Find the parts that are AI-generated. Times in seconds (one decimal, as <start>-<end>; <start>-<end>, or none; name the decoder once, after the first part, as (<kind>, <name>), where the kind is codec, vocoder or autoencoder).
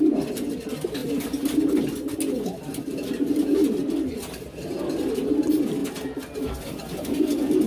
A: none